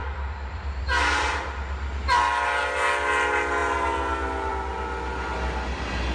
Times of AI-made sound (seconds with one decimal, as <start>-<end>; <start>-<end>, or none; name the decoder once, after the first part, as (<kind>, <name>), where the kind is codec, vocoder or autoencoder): 0.0-0.8 (vocoder, BigVGAN v2)